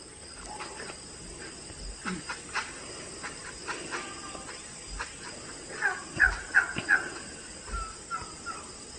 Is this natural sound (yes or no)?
yes